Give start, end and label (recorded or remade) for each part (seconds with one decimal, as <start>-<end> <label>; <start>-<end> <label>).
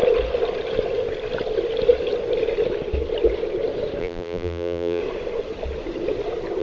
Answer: 0.0-4.0 recorded; 4.0-5.0 remade; 5.0-6.6 recorded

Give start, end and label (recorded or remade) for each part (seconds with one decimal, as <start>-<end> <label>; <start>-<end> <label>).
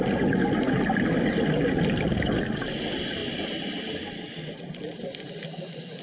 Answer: 0.0-6.0 recorded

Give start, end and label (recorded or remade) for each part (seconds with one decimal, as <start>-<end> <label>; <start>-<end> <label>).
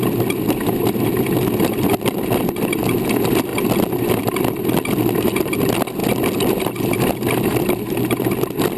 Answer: 0.0-8.8 recorded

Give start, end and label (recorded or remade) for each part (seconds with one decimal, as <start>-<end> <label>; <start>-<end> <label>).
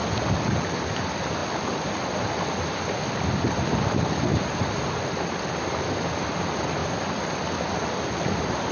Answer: 0.0-4.3 recorded; 4.3-5.4 remade; 5.4-8.7 recorded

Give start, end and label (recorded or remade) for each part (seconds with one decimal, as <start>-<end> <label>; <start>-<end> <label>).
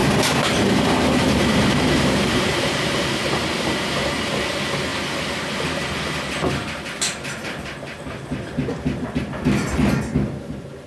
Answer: 0.0-3.2 remade; 3.2-10.9 recorded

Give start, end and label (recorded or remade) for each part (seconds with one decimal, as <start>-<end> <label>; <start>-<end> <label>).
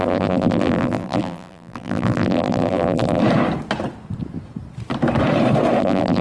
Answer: 0.0-3.2 remade; 3.2-5.8 recorded; 5.8-6.2 remade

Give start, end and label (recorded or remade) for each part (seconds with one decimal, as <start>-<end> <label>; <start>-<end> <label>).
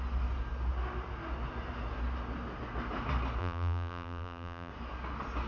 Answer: 0.0-3.4 recorded; 3.4-4.7 remade; 4.7-5.5 recorded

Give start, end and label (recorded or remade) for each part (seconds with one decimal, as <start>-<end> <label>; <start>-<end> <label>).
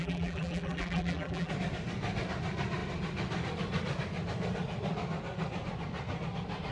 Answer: 0.0-1.5 remade; 1.5-6.7 recorded